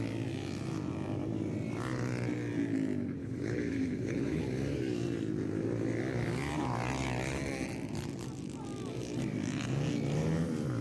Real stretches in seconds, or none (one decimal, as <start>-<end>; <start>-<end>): 0.0-3.2; 4.4-10.8